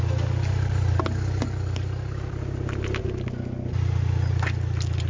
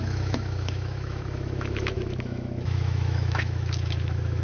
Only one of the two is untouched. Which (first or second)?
first